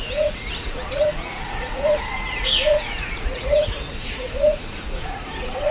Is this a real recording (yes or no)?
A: no